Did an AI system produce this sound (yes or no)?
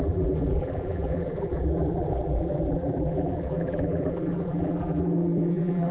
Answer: yes